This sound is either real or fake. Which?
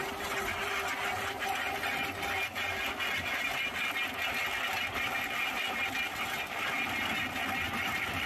real